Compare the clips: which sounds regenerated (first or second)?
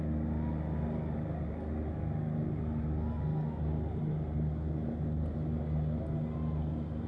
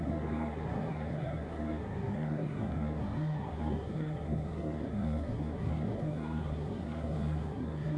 second